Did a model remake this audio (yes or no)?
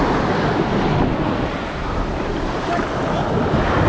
no